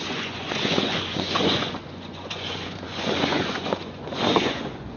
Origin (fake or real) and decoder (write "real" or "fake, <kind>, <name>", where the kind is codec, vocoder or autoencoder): fake, vocoder, Vocos